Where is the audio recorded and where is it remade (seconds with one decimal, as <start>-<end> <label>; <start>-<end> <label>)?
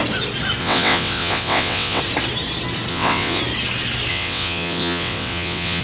0.0-0.6 recorded; 0.6-2.0 remade; 2.0-2.9 recorded; 2.9-3.4 remade; 3.4-4.1 recorded; 4.1-5.8 remade